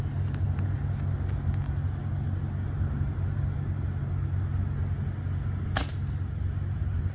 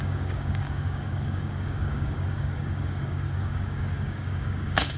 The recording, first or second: first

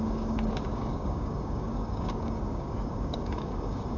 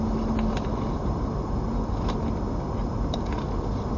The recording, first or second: second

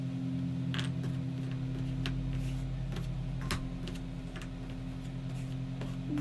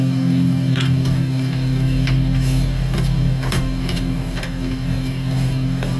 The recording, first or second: first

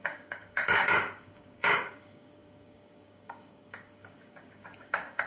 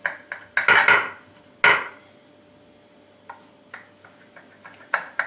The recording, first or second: second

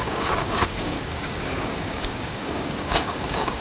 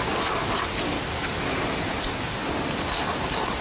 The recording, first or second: second